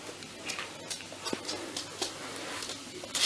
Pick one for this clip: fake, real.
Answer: real